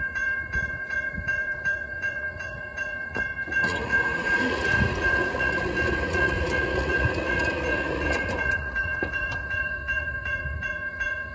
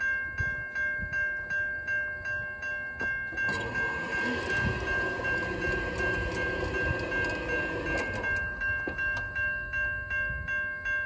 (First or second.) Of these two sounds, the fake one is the first